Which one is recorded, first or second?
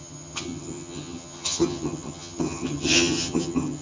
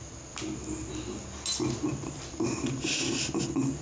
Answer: second